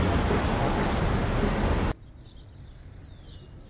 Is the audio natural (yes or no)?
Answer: yes